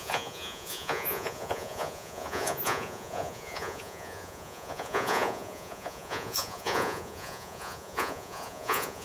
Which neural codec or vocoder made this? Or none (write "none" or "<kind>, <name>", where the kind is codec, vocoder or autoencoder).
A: vocoder, Vocos